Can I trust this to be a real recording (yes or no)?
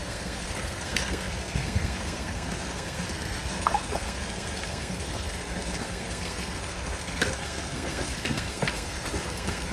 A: no